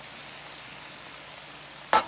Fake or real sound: real